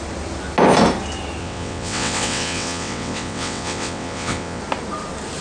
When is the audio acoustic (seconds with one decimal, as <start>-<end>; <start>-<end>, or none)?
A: 0.0-1.4; 4.6-5.4